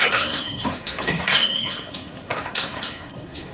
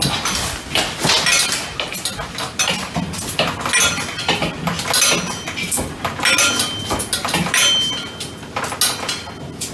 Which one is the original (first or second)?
second